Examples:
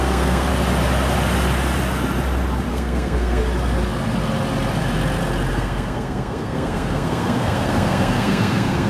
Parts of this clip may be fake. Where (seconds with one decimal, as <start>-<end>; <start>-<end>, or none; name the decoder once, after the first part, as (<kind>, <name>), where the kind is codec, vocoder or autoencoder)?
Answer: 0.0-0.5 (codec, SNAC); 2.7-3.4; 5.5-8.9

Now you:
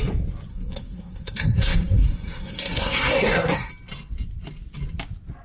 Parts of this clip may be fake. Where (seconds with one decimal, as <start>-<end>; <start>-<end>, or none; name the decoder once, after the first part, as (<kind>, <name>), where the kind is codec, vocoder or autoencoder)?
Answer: 0.5-3.7 (codec, SNAC)

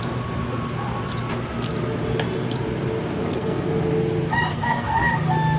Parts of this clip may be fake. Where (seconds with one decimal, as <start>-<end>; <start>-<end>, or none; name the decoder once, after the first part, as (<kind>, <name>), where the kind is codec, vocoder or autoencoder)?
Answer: 3.2-3.7 (codec, SNAC); 4.5-5.1

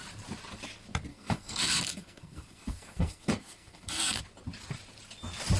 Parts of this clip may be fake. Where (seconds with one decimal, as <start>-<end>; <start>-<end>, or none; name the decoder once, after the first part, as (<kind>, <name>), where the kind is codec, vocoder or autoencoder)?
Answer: 1.1-4.2 (codec, SNAC)